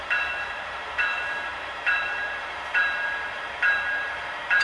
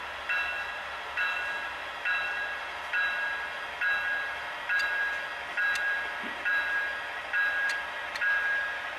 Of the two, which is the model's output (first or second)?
first